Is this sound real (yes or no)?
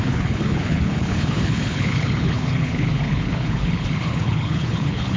no